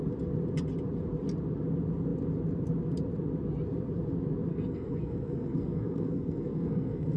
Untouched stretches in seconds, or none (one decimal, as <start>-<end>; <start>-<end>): 0.0-4.5